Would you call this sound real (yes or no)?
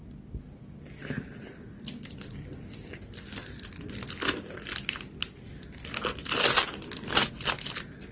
yes